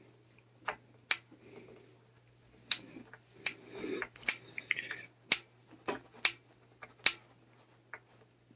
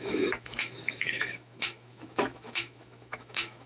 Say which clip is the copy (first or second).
second